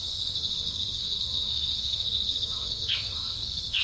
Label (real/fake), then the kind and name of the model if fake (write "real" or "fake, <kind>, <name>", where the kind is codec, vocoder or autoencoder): fake, codec, SNAC